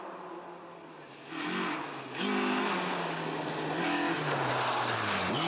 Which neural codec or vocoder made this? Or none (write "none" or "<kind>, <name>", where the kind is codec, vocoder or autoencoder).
none